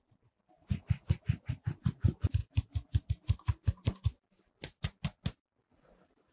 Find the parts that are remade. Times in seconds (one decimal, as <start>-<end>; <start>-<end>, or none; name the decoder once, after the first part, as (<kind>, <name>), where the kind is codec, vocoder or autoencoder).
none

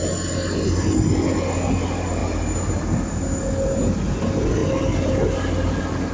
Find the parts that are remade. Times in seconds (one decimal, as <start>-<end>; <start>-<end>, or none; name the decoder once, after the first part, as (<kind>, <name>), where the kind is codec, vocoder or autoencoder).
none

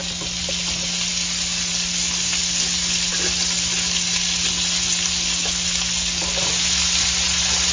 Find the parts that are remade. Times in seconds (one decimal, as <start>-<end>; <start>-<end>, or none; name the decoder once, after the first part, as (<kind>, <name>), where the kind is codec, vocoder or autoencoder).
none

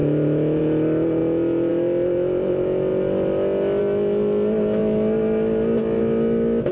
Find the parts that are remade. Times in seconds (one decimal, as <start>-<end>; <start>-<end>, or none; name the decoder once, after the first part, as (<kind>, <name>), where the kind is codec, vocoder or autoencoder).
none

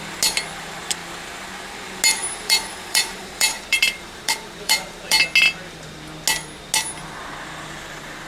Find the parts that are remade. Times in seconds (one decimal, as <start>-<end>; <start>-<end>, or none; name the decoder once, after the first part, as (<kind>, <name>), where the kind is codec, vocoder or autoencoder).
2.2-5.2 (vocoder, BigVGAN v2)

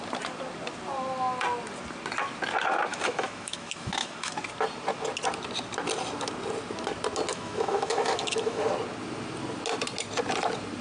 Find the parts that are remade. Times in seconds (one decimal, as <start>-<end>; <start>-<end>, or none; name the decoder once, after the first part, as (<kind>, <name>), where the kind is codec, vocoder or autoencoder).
2.9-4.3 (autoencoder, DAC-VAE); 7.3-8.7